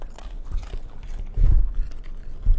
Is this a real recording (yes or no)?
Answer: yes